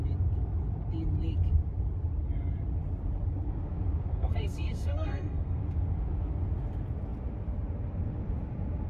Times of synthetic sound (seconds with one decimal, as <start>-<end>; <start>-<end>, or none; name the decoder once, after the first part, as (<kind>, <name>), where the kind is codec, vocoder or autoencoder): 4.1-5.6 (codec, SNAC)